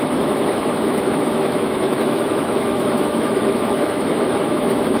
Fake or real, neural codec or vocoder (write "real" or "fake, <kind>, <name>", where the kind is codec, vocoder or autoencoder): fake, autoencoder, DAC-VAE